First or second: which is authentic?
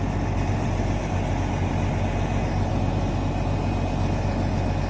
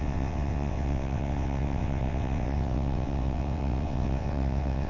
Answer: first